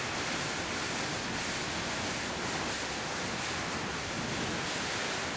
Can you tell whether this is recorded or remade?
recorded